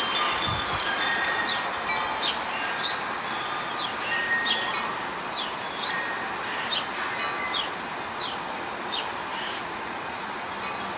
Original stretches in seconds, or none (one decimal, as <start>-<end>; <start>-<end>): 0.0-0.7; 1.6-9.3; 10.5-11.0